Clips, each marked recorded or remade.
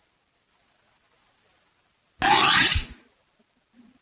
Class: recorded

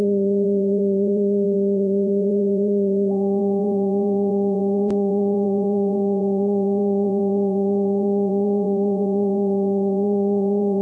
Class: remade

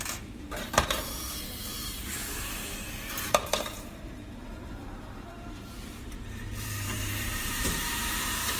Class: remade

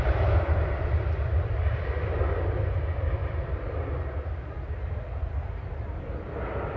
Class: remade